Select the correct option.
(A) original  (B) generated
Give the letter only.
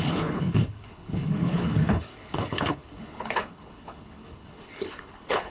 B